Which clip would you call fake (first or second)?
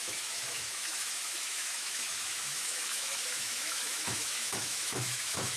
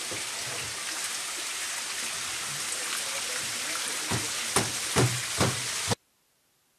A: first